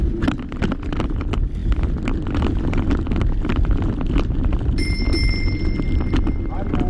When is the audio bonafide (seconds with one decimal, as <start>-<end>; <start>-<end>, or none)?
0.0-1.6; 5.0-6.9